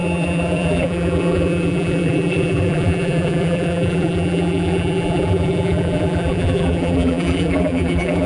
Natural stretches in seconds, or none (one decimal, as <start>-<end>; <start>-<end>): none